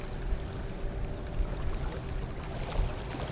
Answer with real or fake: real